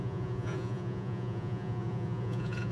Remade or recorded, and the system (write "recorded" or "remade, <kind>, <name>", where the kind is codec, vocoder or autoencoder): remade, vocoder, Vocos